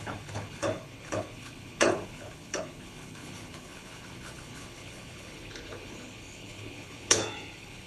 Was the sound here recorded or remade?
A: remade